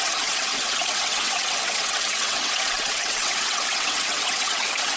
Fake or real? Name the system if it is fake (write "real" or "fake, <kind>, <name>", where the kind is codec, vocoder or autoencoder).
fake, vocoder, WaveNeXt